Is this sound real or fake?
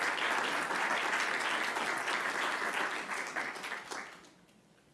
real